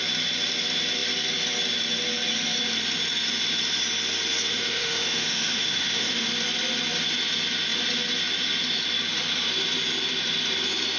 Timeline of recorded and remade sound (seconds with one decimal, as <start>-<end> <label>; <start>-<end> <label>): 0.0-4.5 recorded; 4.5-6.3 remade; 6.3-11.0 recorded